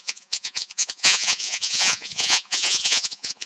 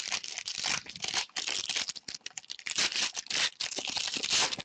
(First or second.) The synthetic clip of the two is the first